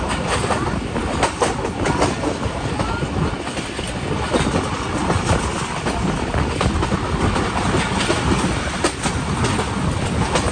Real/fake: real